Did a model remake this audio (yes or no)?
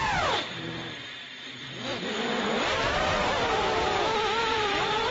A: yes